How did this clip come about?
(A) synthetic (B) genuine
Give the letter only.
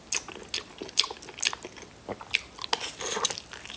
B